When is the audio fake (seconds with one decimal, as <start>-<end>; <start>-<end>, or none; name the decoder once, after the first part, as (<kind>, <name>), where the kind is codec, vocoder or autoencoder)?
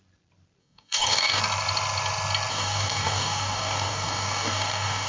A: 0.6-1.4 (codec, DAC); 2.5-5.1